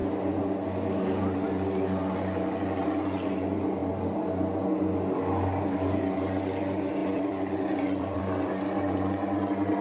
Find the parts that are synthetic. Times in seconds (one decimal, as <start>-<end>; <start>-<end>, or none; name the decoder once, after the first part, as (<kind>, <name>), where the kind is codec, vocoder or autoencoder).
7.0-8.2 (vocoder, BigVGAN v2)

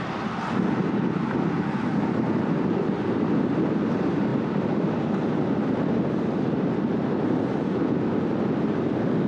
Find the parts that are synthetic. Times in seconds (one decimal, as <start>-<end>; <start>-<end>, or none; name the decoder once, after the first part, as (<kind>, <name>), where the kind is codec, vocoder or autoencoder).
none